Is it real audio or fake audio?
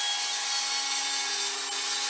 real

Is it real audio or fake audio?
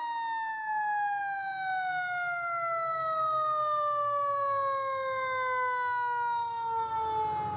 real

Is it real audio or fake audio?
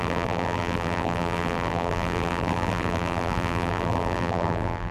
fake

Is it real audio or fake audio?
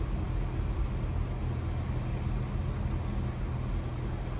real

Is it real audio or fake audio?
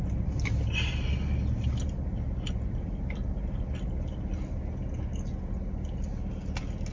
real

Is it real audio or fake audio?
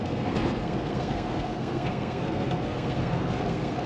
fake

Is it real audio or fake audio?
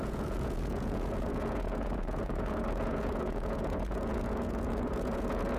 fake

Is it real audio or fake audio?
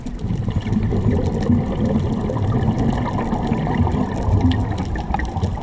real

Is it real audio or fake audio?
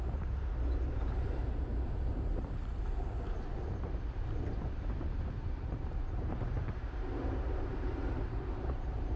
fake